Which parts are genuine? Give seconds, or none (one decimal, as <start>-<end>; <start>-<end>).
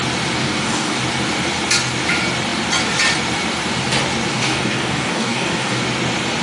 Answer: 0.0-0.4; 1.0-4.3; 5.8-6.4